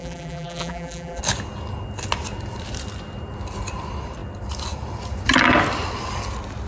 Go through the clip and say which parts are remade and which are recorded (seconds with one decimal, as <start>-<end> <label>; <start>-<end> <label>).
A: 0.0-1.2 remade; 1.2-6.7 recorded